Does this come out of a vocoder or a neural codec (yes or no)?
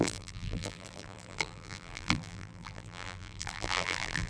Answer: yes